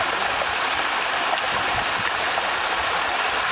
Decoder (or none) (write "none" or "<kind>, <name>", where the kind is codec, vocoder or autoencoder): none